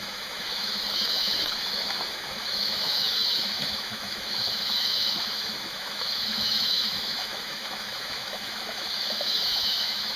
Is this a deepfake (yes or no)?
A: yes